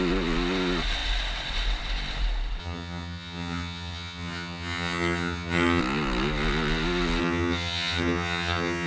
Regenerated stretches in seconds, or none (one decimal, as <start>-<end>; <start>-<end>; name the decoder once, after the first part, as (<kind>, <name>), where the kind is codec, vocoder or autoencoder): 2.6-5.8 (vocoder, HiFi-GAN); 7.2-8.9